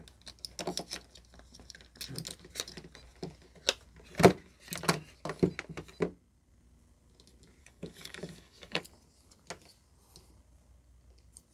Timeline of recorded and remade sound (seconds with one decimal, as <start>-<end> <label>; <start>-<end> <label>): 0.0-7.6 recorded; 7.6-8.8 remade; 8.8-11.5 recorded